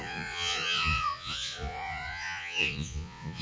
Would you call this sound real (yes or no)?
no